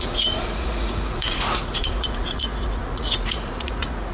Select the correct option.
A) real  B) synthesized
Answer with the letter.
B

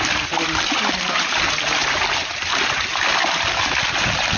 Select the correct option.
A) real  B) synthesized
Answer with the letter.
A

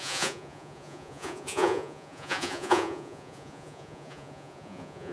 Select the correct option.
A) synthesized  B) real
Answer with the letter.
A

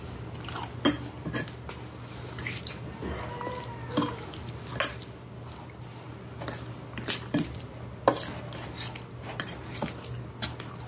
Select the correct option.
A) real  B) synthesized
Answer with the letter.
A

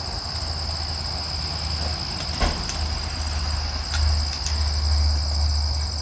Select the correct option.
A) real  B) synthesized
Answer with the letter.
A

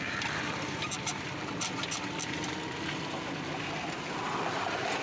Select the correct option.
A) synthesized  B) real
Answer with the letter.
B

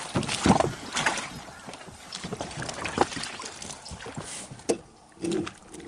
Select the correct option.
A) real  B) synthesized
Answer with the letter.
A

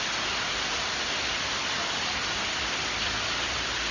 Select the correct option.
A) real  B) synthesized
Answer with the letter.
A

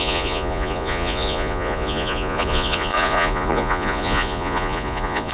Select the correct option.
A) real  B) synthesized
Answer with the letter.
B